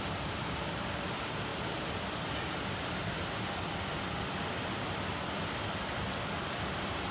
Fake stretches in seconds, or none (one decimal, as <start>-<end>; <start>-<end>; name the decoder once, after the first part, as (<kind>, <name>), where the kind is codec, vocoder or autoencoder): 0.0-7.1 (vocoder, BigVGAN v2)